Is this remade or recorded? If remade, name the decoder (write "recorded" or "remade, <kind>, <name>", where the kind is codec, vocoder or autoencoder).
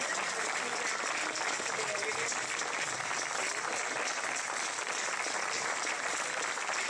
recorded